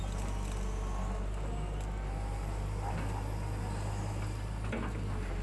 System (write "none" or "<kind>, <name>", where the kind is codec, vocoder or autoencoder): none